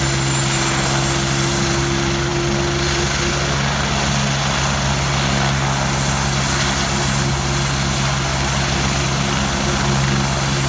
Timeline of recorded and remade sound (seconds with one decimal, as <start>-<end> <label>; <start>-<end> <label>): 0.0-10.7 recorded